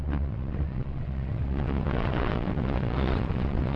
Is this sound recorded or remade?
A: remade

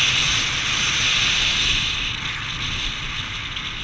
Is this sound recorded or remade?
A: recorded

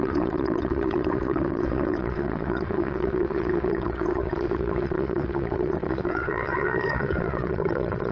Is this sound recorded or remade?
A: remade